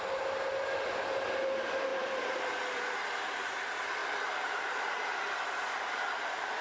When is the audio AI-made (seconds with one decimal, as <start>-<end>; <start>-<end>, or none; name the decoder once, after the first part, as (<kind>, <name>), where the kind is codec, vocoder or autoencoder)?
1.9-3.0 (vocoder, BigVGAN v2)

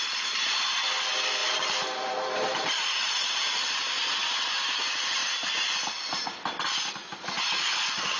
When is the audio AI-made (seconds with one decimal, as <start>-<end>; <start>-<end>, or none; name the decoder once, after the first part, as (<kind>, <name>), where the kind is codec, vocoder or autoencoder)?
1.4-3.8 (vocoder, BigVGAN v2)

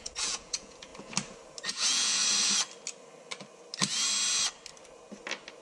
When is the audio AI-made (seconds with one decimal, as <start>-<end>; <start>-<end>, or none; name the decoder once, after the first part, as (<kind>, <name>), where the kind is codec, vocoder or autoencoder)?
0.0-0.9 (vocoder, Vocos); 1.7-2.2

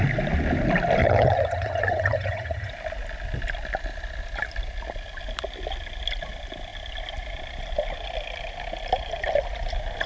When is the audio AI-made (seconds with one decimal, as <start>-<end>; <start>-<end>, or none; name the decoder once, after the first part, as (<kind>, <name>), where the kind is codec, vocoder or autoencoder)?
1.0-2.7 (vocoder, HiFi-GAN)

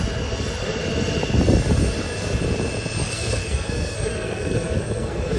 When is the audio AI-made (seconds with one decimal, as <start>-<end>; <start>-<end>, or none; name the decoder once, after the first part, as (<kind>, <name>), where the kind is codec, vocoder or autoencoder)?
3.0-5.4 (codec, SNAC)

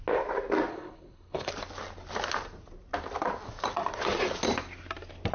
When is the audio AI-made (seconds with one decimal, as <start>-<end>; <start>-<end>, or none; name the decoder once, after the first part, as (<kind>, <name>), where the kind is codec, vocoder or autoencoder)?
0.7-1.5 (codec, HILCodec)

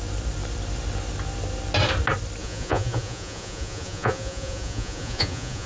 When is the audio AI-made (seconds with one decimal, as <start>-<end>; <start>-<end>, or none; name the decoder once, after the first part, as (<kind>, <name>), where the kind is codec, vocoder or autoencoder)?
2.4-5.7 (vocoder, Vocos)

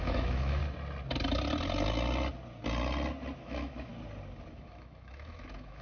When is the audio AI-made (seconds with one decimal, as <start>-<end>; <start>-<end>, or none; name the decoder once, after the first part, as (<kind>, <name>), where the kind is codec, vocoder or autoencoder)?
0.0-0.6 (autoencoder, DAC-VAE); 3.4-3.9; 4.5-5.8